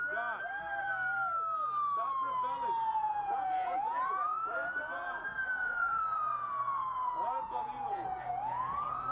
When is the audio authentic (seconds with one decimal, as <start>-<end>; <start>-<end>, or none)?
0.0-2.9; 4.5-5.6; 8.3-9.1